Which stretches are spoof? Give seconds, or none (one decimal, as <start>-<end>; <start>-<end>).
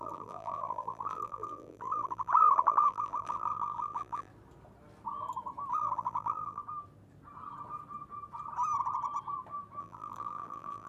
0.0-4.3; 5.7-6.6; 9.8-10.9